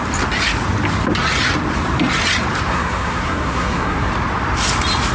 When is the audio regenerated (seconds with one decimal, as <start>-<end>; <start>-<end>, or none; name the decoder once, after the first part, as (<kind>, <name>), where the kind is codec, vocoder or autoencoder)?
2.7-4.1 (codec, SNAC)